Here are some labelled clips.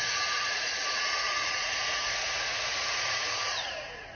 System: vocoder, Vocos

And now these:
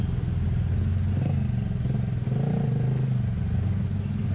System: none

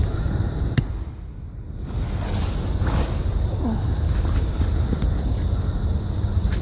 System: none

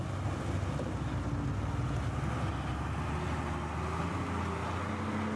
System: none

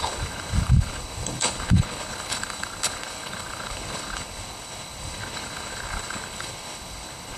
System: codec, HILCodec